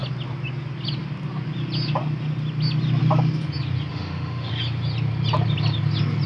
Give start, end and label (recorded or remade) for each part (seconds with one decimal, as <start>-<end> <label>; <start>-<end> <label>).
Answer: 0.0-3.9 recorded; 3.9-4.5 remade; 4.5-6.3 recorded